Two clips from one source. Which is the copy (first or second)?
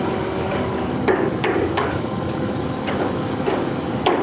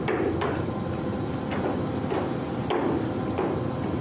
first